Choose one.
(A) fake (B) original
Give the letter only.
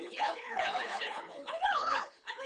A